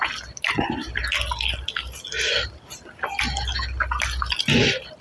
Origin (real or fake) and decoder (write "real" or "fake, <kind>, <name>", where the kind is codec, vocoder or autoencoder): real